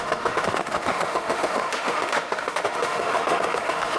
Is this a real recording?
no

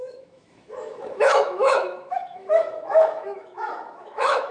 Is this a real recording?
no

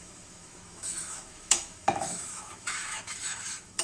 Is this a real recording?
no